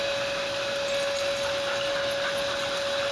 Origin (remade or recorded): recorded